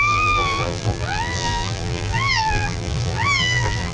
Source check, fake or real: fake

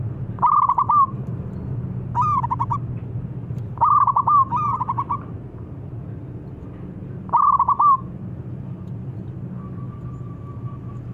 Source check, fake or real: real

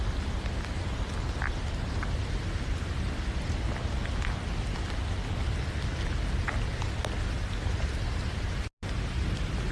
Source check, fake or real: real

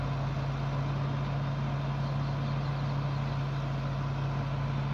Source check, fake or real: real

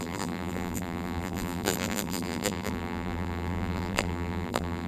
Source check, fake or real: fake